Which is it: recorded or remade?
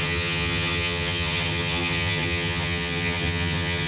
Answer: remade